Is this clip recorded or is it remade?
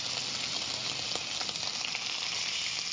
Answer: recorded